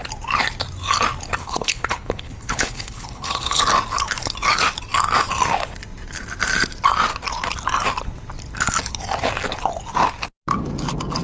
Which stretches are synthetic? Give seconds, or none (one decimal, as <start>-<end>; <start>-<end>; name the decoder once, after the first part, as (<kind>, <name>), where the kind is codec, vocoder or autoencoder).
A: 1.4-3.6 (codec, HILCodec)